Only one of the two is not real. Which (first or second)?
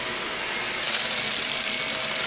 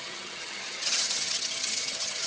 second